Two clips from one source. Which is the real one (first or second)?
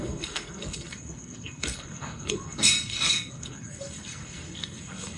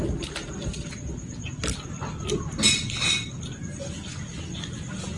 second